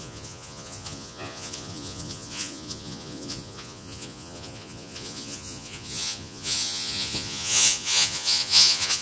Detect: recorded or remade remade